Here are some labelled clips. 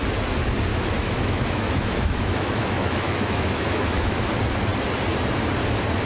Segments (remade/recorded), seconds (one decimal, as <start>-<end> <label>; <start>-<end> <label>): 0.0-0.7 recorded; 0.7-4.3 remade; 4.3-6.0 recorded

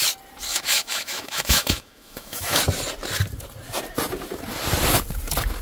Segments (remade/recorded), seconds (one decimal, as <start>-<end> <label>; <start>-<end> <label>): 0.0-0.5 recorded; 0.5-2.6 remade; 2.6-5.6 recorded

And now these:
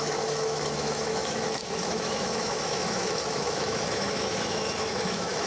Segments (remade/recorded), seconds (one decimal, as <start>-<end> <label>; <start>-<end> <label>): 0.0-5.5 remade